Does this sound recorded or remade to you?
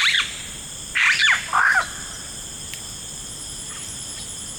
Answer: remade